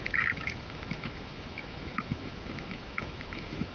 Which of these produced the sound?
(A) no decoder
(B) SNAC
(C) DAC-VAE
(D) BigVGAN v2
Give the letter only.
C